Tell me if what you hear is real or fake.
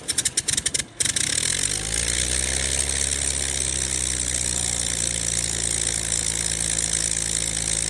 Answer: real